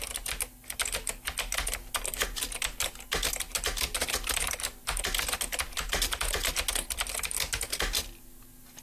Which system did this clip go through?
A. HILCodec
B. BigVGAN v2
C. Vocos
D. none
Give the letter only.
D